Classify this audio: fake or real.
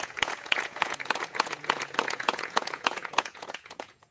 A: fake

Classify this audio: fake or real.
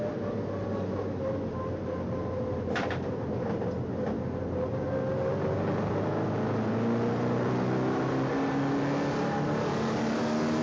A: real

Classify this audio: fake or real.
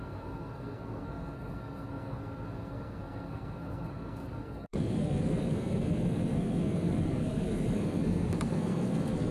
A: fake